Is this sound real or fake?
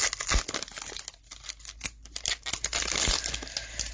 real